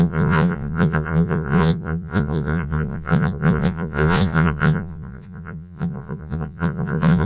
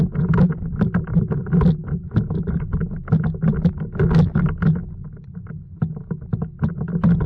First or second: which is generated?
first